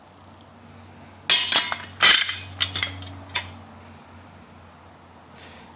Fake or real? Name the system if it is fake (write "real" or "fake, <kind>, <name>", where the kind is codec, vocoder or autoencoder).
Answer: real